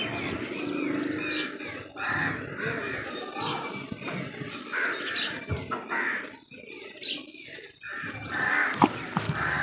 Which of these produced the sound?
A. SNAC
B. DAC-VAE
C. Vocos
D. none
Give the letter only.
D